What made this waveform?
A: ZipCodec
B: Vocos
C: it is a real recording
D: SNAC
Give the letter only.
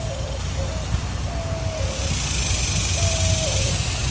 C